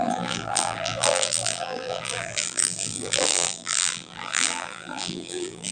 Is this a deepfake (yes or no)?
yes